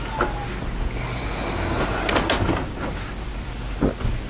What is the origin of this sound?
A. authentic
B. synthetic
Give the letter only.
A